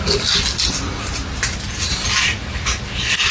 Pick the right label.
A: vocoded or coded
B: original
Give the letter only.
B